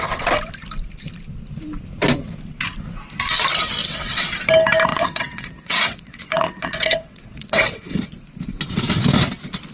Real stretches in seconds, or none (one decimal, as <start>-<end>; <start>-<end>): 0.0-3.8; 4.3-4.9; 7.9-9.7